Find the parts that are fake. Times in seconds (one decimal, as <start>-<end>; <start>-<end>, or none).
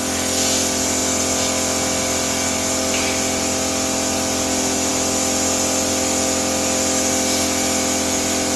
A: none